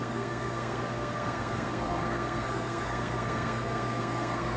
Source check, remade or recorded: remade